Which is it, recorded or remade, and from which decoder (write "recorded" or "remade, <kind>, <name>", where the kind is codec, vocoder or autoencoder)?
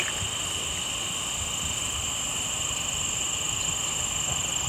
recorded